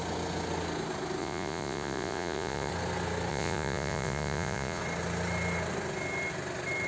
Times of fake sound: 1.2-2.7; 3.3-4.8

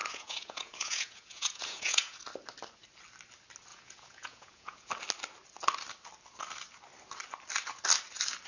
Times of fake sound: 0.0-2.2; 3.7-4.9